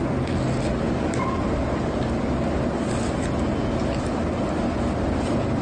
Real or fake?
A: real